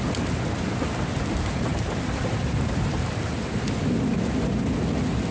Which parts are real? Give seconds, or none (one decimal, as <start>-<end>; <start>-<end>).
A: 0.0-1.7; 4.2-5.3